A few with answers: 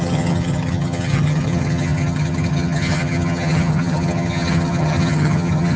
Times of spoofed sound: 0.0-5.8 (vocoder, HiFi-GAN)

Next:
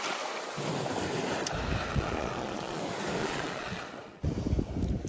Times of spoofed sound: 1.9-2.8 (vocoder, Vocos); 3.2-4.3

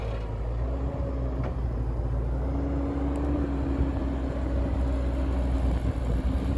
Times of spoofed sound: none

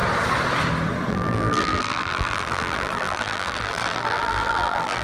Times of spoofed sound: 1.1-5.0 (vocoder, BigVGAN v2)